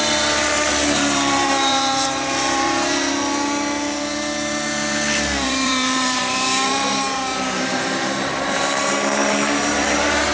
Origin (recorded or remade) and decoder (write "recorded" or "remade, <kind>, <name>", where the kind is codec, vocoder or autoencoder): remade, vocoder, BigVGAN v2